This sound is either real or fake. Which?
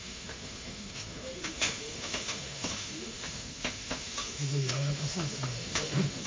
fake